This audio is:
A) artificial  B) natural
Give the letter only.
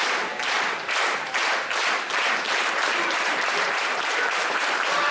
A